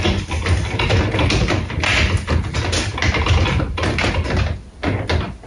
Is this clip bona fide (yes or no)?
yes